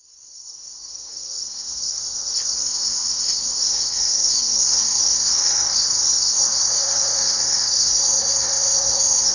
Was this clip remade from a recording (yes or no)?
yes